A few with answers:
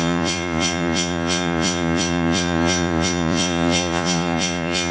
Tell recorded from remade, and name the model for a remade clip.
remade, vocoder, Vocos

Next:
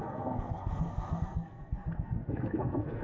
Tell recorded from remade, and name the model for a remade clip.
remade, codec, SNAC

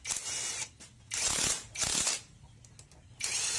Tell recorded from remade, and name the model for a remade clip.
recorded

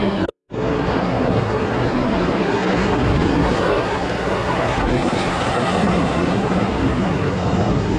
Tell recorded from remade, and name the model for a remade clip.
remade, codec, SNAC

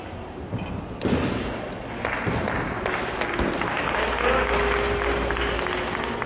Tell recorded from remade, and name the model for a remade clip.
recorded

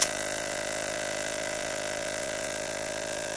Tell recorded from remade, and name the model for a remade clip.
remade, vocoder, Vocos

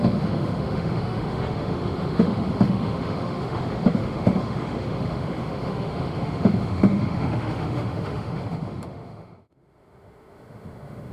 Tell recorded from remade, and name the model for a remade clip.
remade, autoencoder, DAC-VAE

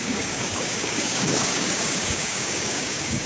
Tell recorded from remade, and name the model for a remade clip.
remade, codec, DAC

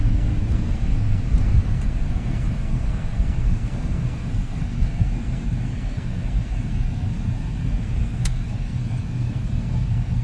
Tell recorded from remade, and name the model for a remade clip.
remade, codec, SNAC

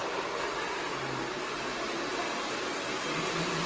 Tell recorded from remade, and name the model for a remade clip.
recorded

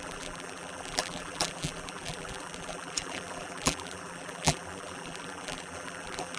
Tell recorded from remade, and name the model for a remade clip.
remade, vocoder, BigVGAN v2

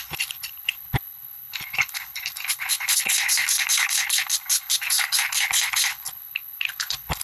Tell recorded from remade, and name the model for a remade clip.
remade, codec, HILCodec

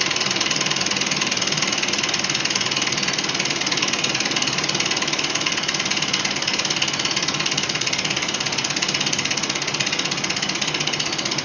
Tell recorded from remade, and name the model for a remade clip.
recorded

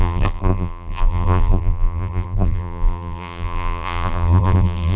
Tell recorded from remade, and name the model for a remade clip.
remade, vocoder, BigVGAN v2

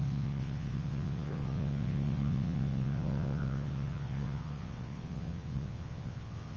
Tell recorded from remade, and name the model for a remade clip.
remade, vocoder, WaveNeXt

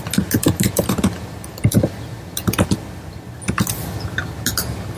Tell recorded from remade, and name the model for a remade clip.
recorded